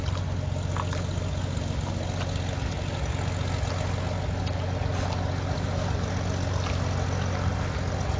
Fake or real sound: real